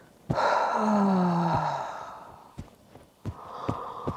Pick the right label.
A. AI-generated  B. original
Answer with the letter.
B